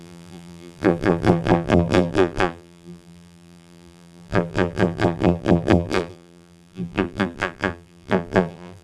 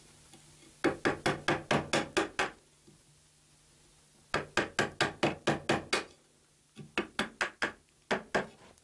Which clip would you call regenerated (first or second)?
first